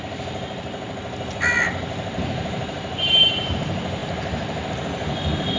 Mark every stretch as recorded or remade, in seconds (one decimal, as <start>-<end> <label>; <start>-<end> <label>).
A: 0.0-1.9 recorded; 1.9-3.5 remade; 3.5-5.6 recorded